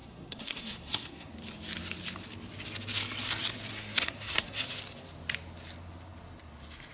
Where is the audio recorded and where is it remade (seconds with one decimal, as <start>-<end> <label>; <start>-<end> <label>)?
0.0-1.3 remade; 1.3-3.7 recorded; 3.7-4.6 remade; 4.6-6.9 recorded

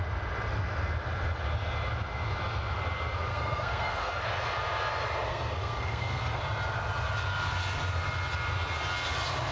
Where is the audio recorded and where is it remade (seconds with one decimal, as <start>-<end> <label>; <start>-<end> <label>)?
0.0-3.3 recorded; 3.3-4.2 remade; 4.2-5.3 recorded; 5.3-6.4 remade; 6.4-9.5 recorded